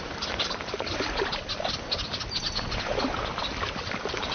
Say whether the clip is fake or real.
fake